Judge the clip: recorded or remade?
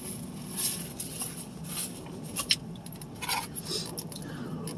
recorded